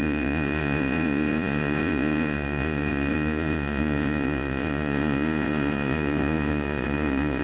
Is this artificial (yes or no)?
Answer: yes